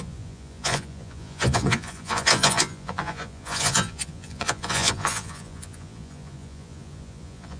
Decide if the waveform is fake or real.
fake